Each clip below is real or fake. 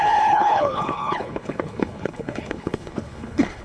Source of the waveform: fake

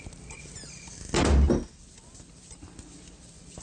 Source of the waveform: real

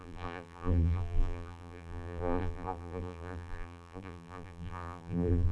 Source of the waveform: fake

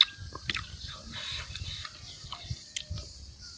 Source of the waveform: real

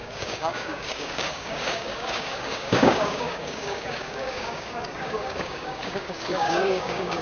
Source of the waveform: fake